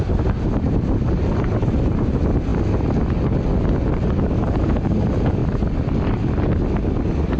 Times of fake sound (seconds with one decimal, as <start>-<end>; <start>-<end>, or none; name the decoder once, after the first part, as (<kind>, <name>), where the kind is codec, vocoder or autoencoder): 0.0-2.5 (vocoder, BigVGAN v2); 4.4-5.4